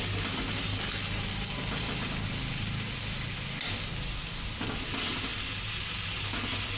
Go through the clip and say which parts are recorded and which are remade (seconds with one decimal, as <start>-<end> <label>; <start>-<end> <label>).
0.0-6.8 recorded